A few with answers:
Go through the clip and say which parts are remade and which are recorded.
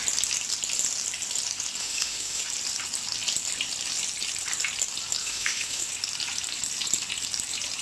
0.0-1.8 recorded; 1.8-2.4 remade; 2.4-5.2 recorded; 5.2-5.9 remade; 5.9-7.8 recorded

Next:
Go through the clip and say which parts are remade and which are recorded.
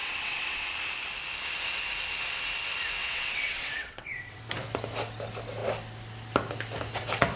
0.0-0.7 remade; 0.7-3.0 recorded; 3.0-4.4 remade; 4.4-7.4 recorded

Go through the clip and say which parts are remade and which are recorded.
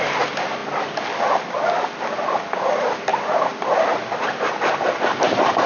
0.0-5.7 recorded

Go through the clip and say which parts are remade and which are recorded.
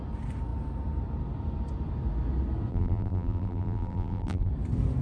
0.0-2.7 recorded; 2.7-4.5 remade; 4.5-5.0 recorded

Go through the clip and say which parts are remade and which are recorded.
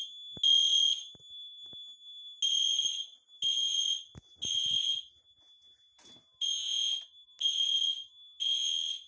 0.0-2.6 recorded; 2.6-3.3 remade; 3.3-9.1 recorded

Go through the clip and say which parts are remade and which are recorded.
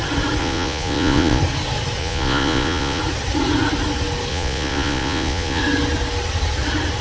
0.0-0.4 recorded; 0.4-1.4 remade; 1.4-2.0 recorded; 2.0-3.0 remade; 3.0-4.3 recorded; 4.3-5.6 remade; 5.6-7.0 recorded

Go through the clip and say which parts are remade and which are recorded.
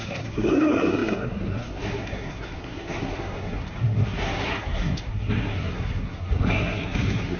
0.0-7.4 remade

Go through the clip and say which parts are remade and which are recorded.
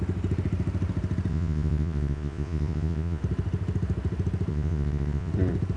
0.0-1.3 recorded; 1.3-3.2 remade; 3.2-4.5 recorded; 4.5-5.3 remade; 5.3-5.8 recorded